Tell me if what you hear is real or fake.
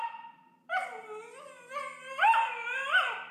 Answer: fake